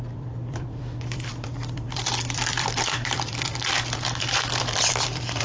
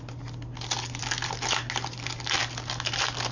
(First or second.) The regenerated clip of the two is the first